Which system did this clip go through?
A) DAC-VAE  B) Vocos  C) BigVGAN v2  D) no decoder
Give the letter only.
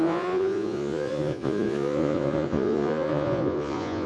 B